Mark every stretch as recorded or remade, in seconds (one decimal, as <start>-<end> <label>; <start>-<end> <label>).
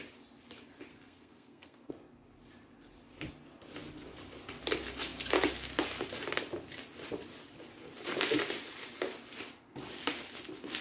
0.0-0.9 recorded; 0.9-1.9 remade; 1.9-10.8 recorded